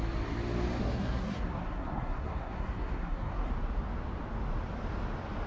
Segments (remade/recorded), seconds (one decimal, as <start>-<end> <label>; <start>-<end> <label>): 0.0-0.8 recorded; 0.8-3.5 remade; 3.5-5.5 recorded